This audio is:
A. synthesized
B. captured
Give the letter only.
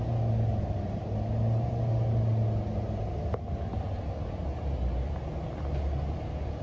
B